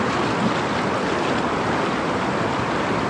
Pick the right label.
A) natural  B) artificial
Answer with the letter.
A